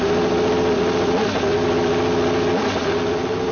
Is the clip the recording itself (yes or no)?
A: yes